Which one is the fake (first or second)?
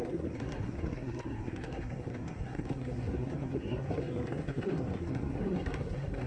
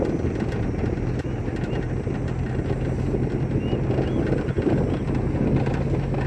first